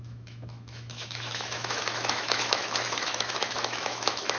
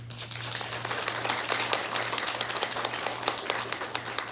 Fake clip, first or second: first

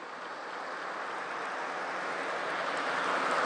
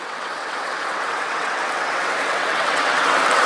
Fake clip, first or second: second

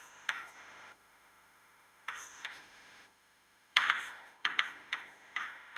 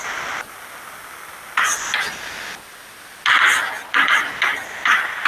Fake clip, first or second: first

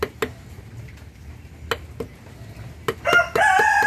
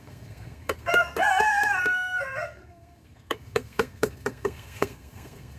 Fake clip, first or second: second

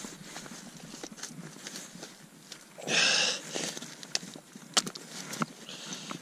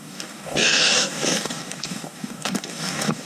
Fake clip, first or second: second